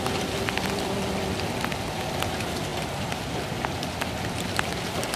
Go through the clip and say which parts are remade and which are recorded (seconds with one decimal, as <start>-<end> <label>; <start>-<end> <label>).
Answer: 0.0-5.2 recorded